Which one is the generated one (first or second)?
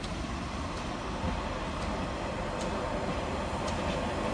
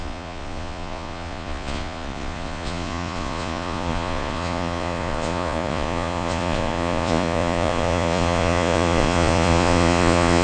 second